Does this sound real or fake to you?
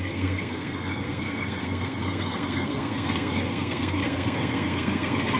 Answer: fake